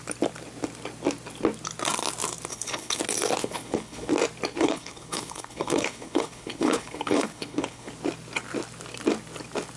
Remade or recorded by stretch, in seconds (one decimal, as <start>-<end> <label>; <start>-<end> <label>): 0.0-2.5 recorded; 2.5-3.0 remade; 3.0-3.4 recorded; 3.4-4.1 remade; 4.1-4.5 recorded; 4.5-7.9 remade; 7.9-9.8 recorded